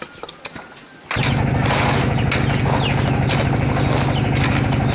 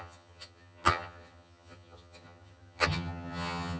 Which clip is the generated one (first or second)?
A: second